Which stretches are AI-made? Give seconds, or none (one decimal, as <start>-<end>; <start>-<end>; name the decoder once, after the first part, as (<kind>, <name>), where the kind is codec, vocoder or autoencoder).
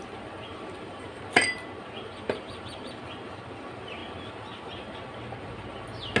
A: 0.5-1.2 (vocoder, BigVGAN v2); 2.1-3.0